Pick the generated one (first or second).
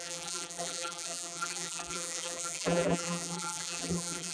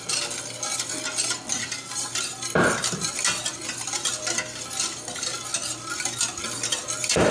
first